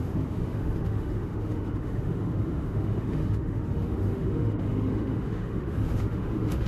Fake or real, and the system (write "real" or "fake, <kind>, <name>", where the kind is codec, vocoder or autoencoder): fake, autoencoder, DAC-VAE